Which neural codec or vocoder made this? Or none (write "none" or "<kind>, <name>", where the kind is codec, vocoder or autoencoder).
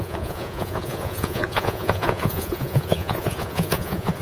vocoder, Vocos